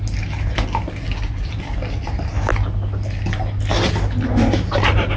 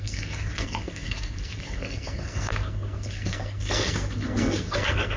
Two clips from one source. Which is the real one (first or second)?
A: first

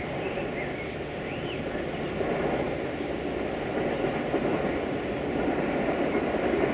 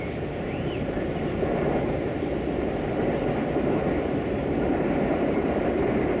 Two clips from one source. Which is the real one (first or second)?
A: first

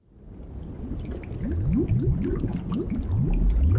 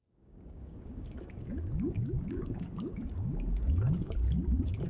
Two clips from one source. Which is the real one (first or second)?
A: first